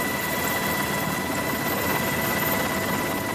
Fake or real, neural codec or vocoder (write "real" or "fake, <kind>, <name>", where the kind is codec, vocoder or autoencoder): real